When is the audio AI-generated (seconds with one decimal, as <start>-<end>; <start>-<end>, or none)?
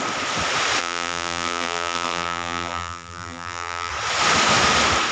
0.8-3.9